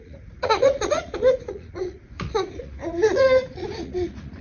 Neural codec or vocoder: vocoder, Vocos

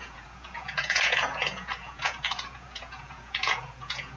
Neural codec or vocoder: vocoder, Vocos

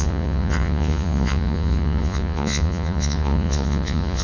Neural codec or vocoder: vocoder, Vocos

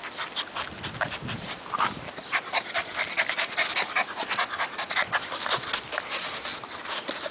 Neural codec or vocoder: none